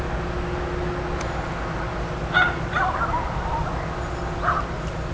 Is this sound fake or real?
real